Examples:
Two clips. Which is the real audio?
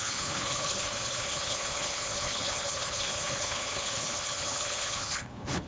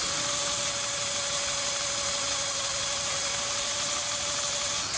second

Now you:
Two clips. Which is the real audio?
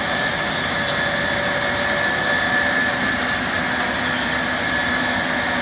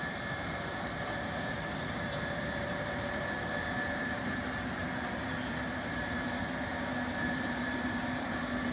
first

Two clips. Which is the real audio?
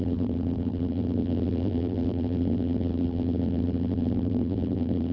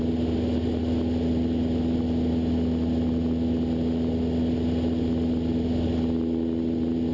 second